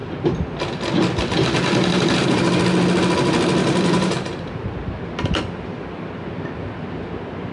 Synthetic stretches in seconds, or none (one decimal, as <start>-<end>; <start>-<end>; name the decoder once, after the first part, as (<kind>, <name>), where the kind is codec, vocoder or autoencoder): 0.0-0.6 (vocoder, BigVGAN v2); 3.6-5.4